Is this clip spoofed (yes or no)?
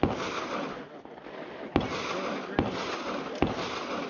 no